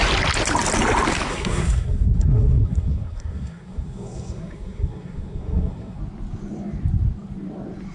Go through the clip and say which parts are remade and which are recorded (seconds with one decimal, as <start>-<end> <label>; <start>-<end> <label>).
0.0-1.3 recorded; 1.3-6.0 remade; 6.0-7.9 recorded